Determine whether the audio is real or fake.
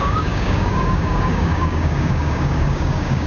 fake